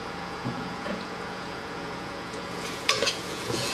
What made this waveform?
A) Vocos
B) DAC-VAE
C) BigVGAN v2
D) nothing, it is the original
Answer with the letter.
A